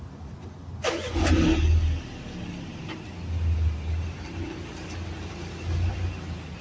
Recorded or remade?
recorded